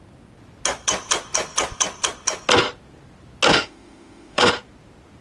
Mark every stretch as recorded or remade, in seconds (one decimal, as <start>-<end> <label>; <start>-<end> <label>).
0.0-3.5 recorded; 3.5-4.5 remade; 4.5-5.2 recorded